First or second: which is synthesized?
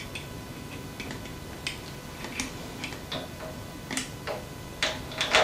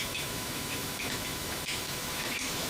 second